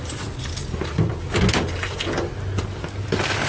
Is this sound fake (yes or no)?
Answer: no